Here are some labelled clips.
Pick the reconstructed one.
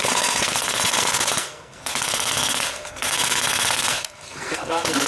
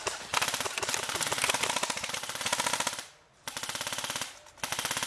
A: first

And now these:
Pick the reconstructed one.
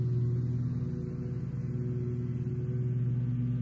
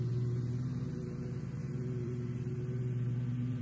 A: second